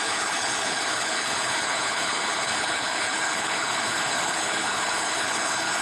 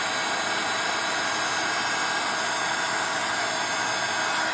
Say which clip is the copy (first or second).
first